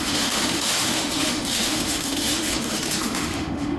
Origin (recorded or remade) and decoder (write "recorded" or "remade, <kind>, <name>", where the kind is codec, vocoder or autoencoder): remade, autoencoder, DAC-VAE